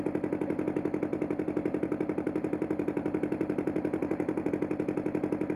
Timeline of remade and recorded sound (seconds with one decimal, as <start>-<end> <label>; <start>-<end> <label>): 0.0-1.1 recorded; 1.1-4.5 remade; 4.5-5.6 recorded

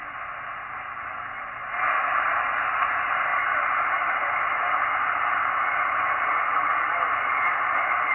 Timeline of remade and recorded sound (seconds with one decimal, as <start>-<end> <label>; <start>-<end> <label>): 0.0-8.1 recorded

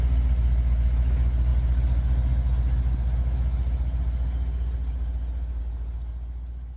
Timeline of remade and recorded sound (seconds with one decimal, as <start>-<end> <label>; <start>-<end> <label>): 0.0-6.8 recorded

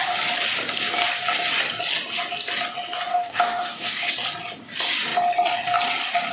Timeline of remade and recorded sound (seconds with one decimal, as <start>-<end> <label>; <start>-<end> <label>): 0.0-3.1 recorded; 3.1-4.1 remade; 4.1-6.3 recorded

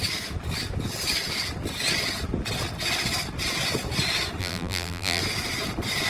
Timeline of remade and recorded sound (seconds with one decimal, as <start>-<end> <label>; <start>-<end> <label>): 0.0-4.4 recorded; 4.4-5.2 remade; 5.2-6.1 recorded

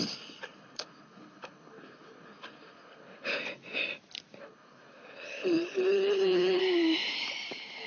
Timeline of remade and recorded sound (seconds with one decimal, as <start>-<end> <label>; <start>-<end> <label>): 0.0-3.4 remade; 3.4-4.4 recorded; 4.4-6.6 remade; 6.6-7.9 recorded

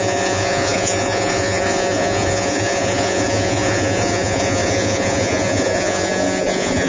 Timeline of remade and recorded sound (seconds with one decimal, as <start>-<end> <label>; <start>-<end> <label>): 0.0-6.9 remade